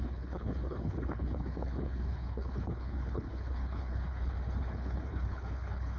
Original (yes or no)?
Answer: no